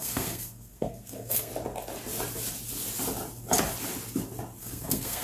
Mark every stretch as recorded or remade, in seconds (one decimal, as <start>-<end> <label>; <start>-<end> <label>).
0.0-1.5 remade; 1.5-4.6 recorded; 4.6-5.2 remade